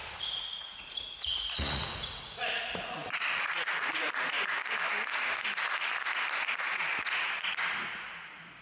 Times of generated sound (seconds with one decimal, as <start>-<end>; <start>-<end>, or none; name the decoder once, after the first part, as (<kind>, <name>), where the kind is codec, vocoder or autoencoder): 0.0-4.6 (vocoder, Vocos); 6.6-8.6